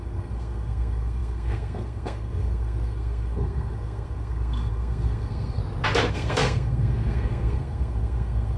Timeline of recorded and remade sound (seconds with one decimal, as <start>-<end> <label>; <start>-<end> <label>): 0.0-5.6 remade; 5.6-6.1 recorded; 6.1-8.6 remade